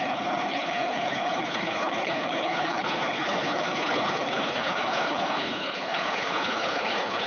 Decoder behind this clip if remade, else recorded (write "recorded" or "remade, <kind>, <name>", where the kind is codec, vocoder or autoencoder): remade, codec, HILCodec